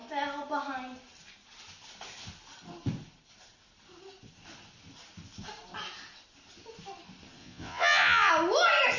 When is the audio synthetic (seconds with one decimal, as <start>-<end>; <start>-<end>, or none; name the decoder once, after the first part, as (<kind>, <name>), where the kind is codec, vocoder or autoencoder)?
7.4-8.3 (vocoder, Vocos)